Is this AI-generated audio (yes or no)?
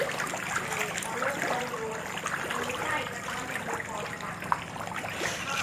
no